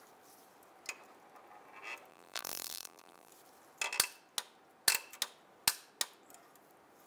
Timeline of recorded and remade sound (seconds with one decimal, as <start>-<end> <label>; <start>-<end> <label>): 0.0-2.1 recorded; 2.1-3.3 remade; 3.3-7.1 recorded